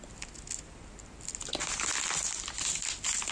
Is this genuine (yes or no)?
yes